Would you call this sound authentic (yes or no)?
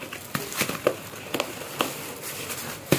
yes